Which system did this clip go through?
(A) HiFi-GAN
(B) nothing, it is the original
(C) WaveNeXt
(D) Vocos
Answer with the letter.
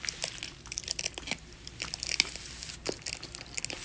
B